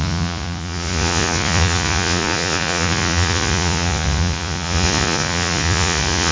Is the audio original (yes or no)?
no